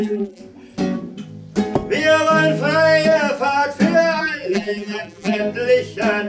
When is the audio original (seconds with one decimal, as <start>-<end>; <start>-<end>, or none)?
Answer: 0.4-4.2; 5.4-6.3